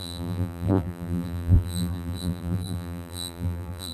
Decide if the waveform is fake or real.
fake